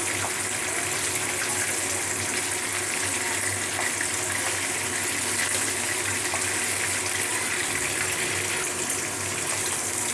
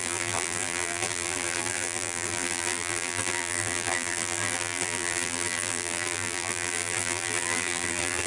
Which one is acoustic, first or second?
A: first